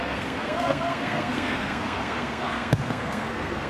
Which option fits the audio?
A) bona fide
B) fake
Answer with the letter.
B